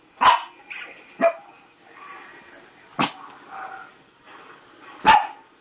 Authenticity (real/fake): real